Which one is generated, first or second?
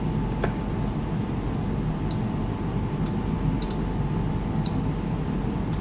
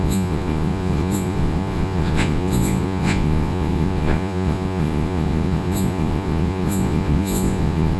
second